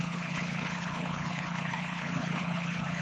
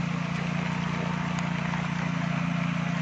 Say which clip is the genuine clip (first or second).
second